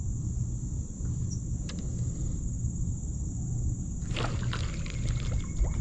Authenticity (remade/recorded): recorded